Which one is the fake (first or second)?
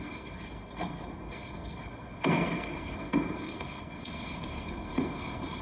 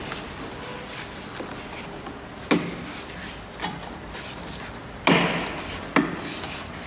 first